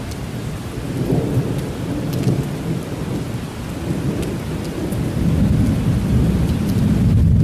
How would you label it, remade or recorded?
recorded